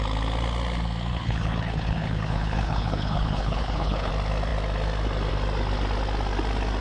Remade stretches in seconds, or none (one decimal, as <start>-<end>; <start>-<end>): 1.1-4.1